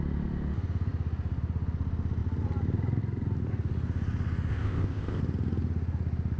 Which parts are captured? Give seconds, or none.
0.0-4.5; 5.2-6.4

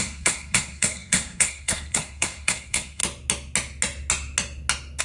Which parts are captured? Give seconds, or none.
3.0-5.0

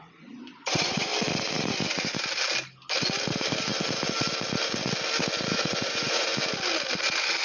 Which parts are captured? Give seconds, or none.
1.1-5.5; 6.3-7.4

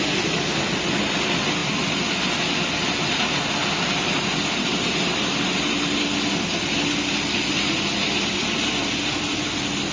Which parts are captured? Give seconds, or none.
0.0-9.9

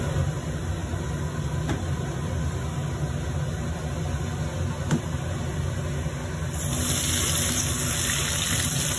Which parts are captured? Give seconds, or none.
0.0-9.0

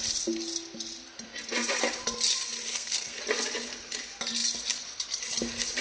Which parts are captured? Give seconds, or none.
0.0-2.7; 3.2-5.8